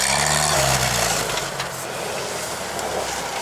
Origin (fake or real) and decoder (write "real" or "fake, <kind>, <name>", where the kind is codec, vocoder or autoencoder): real